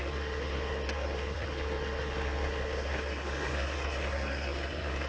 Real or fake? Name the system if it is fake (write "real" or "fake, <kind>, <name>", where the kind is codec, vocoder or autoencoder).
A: fake, codec, SNAC